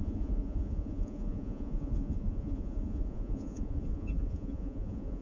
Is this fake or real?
fake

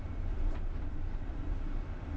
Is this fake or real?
fake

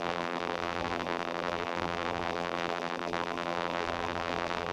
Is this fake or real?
fake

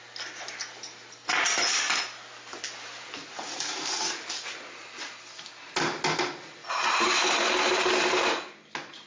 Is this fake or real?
real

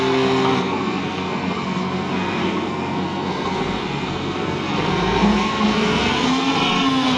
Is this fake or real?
fake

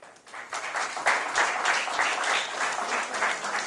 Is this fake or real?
real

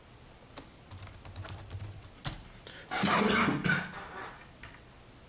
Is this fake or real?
real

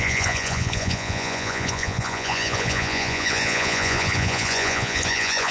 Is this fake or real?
fake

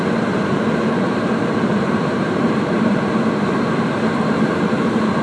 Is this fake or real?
fake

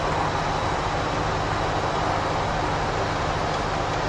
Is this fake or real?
real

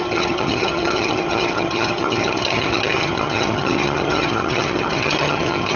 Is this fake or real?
fake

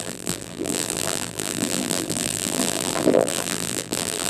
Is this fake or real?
fake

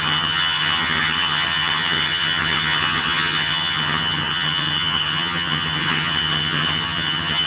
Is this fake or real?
fake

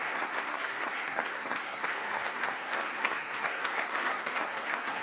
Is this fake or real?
fake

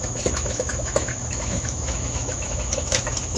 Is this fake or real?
fake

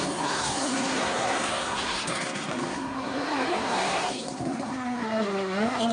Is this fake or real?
fake